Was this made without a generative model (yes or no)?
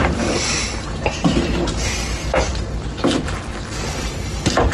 yes